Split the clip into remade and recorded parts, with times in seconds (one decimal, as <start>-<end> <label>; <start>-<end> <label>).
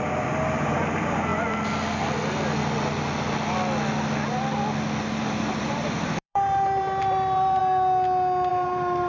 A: 0.0-1.3 remade; 1.3-5.0 recorded; 5.0-7.6 remade; 7.6-8.5 recorded; 8.5-9.1 remade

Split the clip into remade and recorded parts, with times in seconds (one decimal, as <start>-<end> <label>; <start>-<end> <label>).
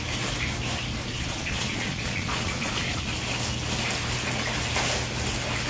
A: 0.0-1.0 recorded; 1.0-3.1 remade; 3.1-5.7 recorded